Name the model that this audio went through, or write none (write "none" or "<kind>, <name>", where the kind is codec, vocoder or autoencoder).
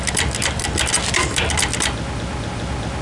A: none